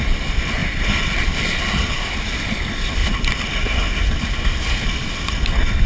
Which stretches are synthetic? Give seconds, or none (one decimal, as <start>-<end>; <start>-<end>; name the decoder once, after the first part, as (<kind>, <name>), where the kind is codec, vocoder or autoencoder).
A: 0.6-2.1 (vocoder, BigVGAN v2); 3.0-4.0